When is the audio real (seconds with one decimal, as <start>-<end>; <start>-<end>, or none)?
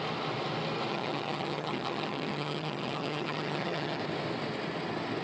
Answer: 0.0-0.9; 4.0-5.2